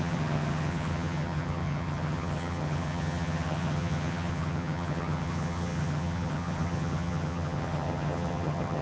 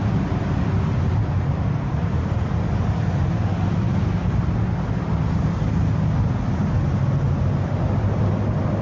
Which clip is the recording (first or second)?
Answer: second